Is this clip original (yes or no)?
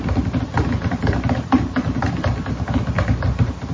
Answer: yes